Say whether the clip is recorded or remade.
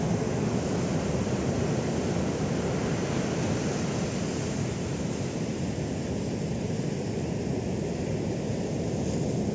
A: recorded